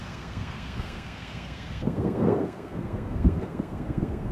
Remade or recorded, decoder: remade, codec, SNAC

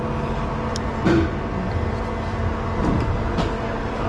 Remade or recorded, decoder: recorded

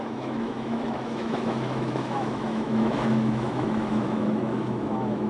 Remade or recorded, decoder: remade, autoencoder, DAC-VAE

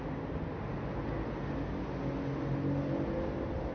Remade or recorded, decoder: recorded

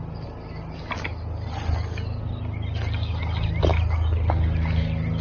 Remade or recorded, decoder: recorded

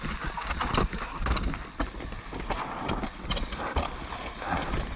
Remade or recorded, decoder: recorded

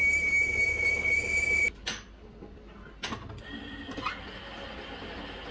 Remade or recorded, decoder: recorded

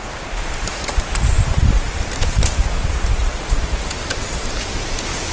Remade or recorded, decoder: recorded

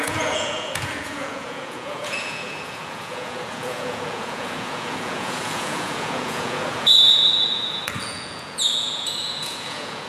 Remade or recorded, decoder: remade, vocoder, Vocos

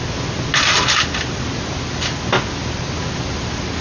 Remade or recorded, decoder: recorded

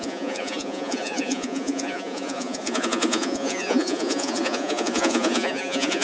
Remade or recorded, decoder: remade, vocoder, Vocos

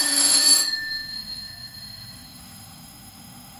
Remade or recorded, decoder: remade, autoencoder, DAC-VAE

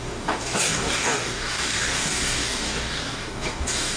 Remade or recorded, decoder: remade, codec, DAC